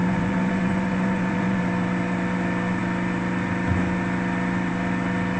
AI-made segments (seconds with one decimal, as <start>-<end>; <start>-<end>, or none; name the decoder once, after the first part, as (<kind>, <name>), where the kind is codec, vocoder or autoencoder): 0.0-1.6 (vocoder, Vocos)